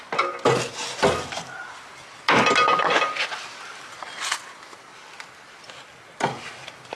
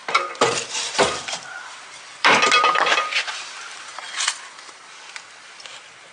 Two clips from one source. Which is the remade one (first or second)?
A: second